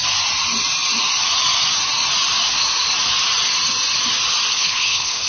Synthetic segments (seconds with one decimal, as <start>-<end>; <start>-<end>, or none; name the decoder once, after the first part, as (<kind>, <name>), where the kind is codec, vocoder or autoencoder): 4.5-5.3 (codec, HILCodec)